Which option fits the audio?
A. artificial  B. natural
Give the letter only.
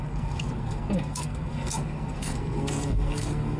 A